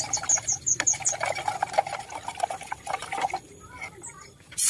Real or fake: real